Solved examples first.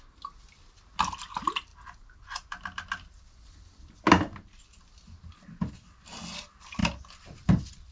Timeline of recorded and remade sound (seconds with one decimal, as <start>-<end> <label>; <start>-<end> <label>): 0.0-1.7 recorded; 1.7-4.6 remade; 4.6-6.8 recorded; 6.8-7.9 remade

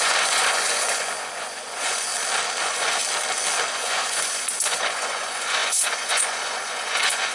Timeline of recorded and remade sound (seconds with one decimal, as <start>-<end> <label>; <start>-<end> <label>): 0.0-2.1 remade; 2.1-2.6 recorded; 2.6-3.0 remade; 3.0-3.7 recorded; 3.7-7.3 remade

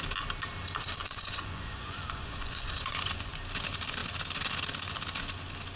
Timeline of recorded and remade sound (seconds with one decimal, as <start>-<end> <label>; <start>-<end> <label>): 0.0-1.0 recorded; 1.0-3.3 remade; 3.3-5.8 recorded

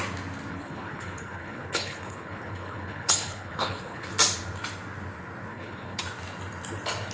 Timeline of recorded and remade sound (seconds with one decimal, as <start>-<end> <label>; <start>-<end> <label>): 0.0-0.5 recorded; 0.5-4.1 remade; 4.1-5.5 recorded; 5.5-6.0 remade; 6.0-7.1 recorded

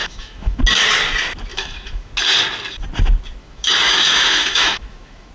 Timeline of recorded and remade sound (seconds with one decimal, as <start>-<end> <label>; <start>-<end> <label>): 0.0-0.6 remade; 0.6-1.5 recorded; 1.5-2.1 remade; 2.1-3.4 recorded; 3.4-5.3 remade

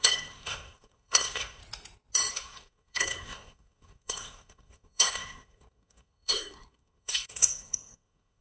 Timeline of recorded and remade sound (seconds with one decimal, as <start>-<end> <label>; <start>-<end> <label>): 0.0-1.6 remade; 1.6-2.3 recorded; 2.3-8.4 remade

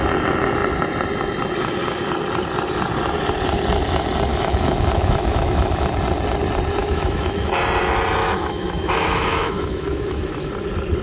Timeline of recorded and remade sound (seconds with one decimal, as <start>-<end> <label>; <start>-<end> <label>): 0.0-4.3 recorded; 4.3-5.9 remade; 5.9-6.8 recorded; 6.8-7.5 remade; 7.5-8.2 recorded; 8.2-10.5 remade; 10.5-11.0 recorded

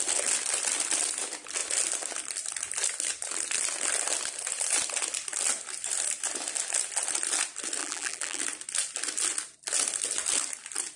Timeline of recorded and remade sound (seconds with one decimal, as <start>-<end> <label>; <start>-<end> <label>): 0.0-7.8 recorded; 7.8-8.4 remade; 8.4-11.0 recorded